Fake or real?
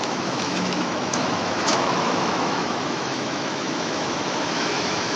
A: fake